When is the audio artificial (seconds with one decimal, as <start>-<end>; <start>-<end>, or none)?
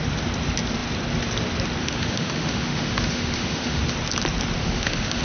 1.8-3.8; 4.6-5.2